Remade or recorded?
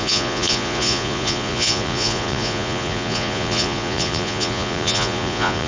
remade